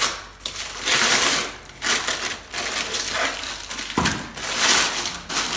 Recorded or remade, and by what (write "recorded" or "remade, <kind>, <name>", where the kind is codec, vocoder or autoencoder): recorded